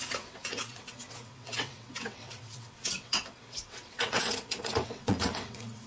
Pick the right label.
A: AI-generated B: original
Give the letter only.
A